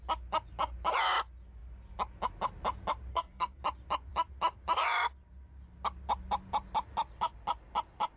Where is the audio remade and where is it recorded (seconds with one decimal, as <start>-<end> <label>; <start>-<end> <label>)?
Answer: 0.0-3.1 recorded; 3.1-3.6 remade; 3.6-8.2 recorded